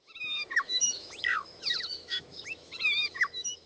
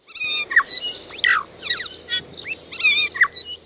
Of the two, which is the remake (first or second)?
first